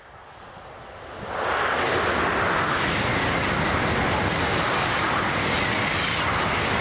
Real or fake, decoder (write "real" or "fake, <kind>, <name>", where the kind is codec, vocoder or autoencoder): real